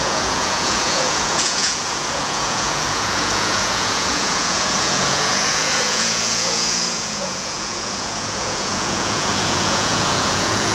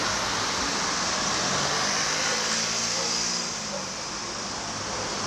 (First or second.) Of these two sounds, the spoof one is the first